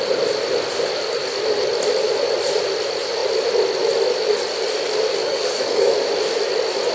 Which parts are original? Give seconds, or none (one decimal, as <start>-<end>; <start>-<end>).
0.0-5.2; 5.9-6.9